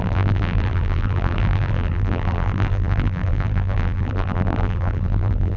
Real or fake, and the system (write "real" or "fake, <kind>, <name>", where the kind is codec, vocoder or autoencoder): fake, vocoder, BigVGAN v2